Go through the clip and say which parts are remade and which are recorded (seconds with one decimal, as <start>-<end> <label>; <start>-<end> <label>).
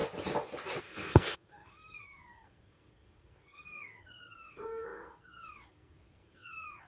0.0-0.8 recorded; 0.8-6.9 remade